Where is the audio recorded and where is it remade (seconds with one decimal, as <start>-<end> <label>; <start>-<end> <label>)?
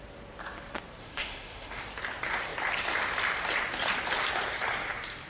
0.0-1.0 recorded; 1.0-1.8 remade; 1.8-5.3 recorded